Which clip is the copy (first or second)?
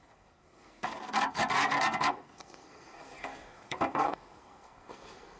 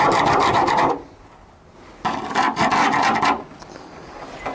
first